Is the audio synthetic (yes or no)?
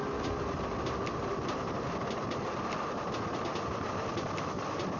no